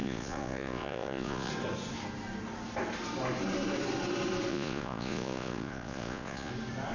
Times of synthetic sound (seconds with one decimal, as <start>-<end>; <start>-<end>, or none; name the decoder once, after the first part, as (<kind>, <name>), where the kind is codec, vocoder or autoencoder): 0.0-1.5 (vocoder, Vocos); 4.5-6.5